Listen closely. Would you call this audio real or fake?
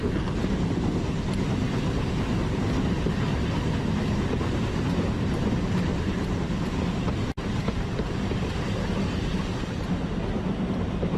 real